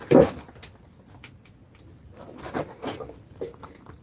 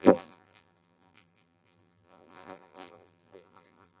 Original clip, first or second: first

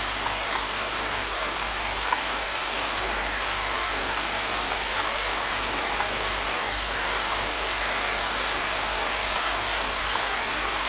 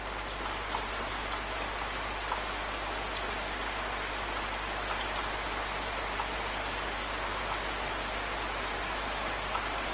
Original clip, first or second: second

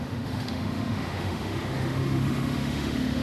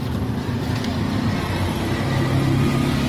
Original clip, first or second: second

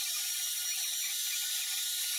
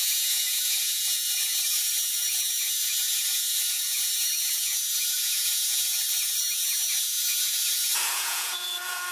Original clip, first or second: first